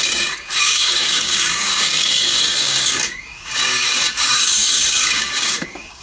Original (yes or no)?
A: no